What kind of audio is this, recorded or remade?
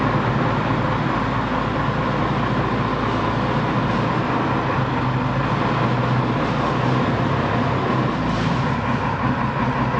recorded